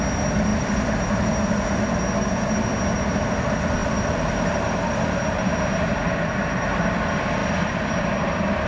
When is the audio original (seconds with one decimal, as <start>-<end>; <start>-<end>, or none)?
0.0-8.7

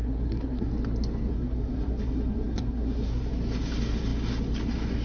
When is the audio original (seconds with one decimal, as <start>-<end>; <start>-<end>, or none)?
0.7-1.3; 3.3-5.0

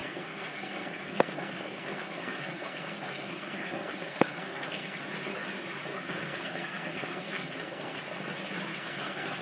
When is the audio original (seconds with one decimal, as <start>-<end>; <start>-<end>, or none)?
5.0-5.9; 8.0-8.7

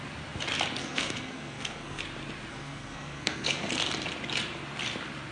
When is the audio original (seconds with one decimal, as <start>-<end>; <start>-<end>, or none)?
0.0-0.8; 2.0-2.5; 3.7-5.3

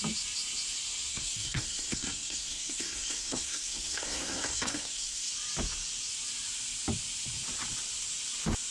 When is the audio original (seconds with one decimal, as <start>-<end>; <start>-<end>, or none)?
0.0-1.1; 5.3-8.7

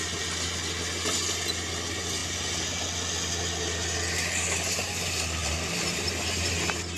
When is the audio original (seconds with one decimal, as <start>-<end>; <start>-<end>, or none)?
0.0-7.0